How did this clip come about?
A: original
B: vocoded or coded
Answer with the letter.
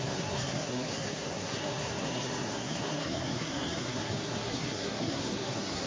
B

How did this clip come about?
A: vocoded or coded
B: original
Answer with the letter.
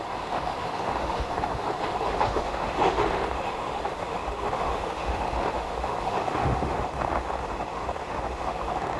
A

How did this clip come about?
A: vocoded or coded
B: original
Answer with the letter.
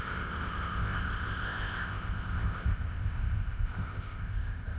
A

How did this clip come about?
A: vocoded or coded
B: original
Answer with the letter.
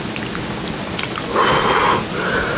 B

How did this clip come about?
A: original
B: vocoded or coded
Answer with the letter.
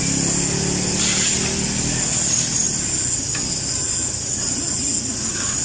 A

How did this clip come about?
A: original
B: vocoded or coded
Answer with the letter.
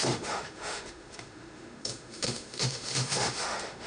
B